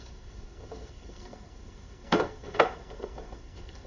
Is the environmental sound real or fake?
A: fake